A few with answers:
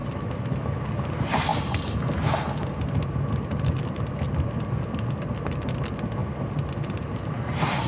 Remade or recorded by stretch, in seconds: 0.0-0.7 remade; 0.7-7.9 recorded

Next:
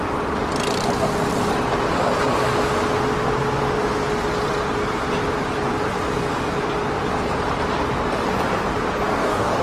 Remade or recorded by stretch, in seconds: 0.0-9.1 recorded; 9.1-9.6 remade

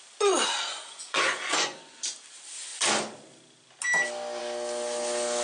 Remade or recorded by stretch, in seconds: 0.0-0.7 recorded; 0.7-2.0 remade; 2.0-5.4 recorded

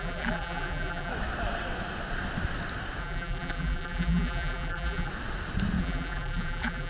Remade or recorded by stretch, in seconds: 0.0-1.1 remade; 1.1-3.0 recorded; 3.0-5.1 remade; 5.1-5.8 recorded; 5.8-6.9 remade